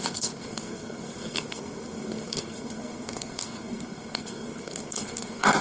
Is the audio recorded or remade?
remade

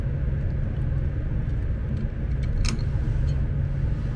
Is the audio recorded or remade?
recorded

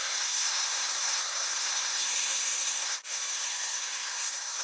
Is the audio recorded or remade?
remade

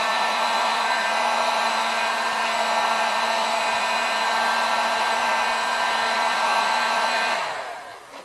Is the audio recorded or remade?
recorded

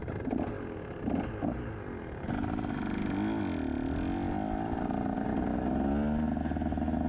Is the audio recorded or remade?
recorded